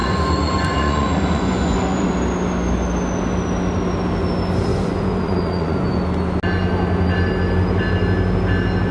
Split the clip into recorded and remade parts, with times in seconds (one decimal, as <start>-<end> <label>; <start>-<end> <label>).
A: 0.0-2.1 remade; 2.1-4.7 recorded; 4.7-6.0 remade; 6.0-8.9 recorded